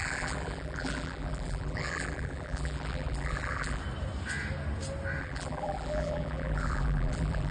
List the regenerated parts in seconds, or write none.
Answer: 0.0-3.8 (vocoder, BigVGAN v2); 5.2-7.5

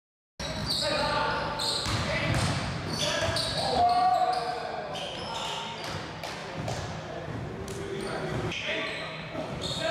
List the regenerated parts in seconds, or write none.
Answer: 4.5-5.2 (vocoder, BigVGAN v2)

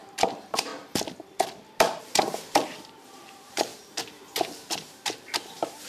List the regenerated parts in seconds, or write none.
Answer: 0.0-0.7 (vocoder, BigVGAN v2); 2.0-5.9